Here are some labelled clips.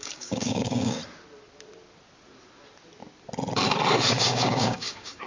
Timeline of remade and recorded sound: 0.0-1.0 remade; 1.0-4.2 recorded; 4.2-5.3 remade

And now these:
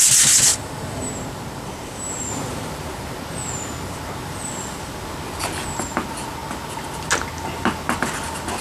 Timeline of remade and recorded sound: 0.0-0.5 recorded; 0.5-2.3 remade; 2.3-8.6 recorded

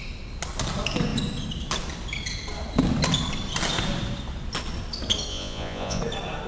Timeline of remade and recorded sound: 0.0-5.3 recorded; 5.3-6.0 remade; 6.0-6.5 recorded

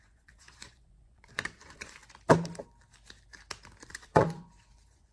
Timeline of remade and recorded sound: 0.0-2.0 remade; 2.0-3.8 recorded; 3.8-5.1 remade